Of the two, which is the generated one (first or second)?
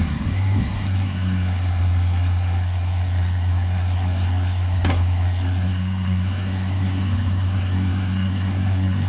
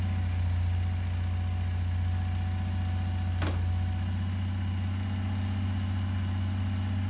first